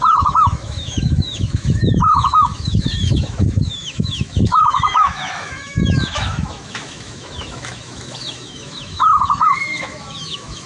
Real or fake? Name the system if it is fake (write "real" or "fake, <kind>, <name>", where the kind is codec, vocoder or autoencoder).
fake, autoencoder, DAC-VAE